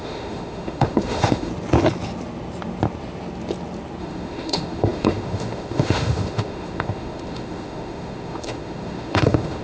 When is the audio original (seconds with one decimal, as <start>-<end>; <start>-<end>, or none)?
1.5-4.0